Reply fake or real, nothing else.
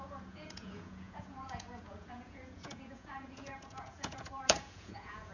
fake